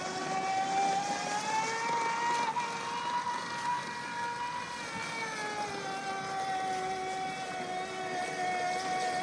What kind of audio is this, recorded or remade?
recorded